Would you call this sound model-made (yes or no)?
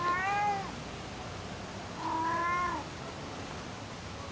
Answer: no